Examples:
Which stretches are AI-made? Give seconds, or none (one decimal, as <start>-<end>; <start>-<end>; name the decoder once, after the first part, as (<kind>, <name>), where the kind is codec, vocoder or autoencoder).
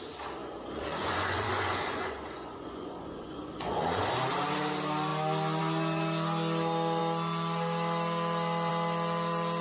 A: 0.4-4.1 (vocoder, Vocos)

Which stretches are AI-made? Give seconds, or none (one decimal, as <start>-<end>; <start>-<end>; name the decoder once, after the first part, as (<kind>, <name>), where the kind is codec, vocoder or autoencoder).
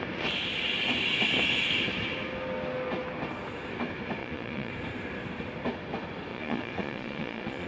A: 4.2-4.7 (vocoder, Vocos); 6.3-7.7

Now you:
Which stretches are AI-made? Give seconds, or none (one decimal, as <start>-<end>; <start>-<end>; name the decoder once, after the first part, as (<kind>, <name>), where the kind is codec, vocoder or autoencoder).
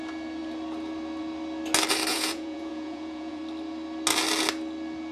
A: 2.1-3.4 (vocoder, Vocos)